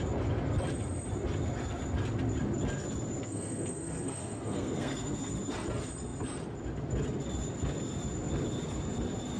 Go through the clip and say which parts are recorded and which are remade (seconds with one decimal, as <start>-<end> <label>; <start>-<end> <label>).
0.0-3.2 recorded; 3.2-5.3 remade; 5.3-9.4 recorded